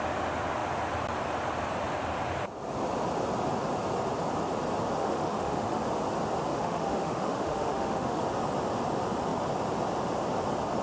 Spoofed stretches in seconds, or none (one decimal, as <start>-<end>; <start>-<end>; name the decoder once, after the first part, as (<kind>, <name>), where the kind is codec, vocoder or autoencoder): 5.0-5.8 (autoencoder, DAC-VAE); 6.5-8.2